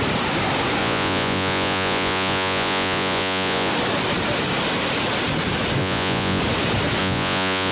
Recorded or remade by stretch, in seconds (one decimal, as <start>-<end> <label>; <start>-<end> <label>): 0.0-0.8 recorded; 0.8-3.7 remade; 3.7-5.8 recorded; 5.8-6.4 remade; 6.4-7.0 recorded; 7.0-7.7 remade